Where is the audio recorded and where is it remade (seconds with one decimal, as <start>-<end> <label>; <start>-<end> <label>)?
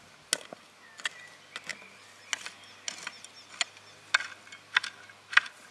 0.0-5.7 recorded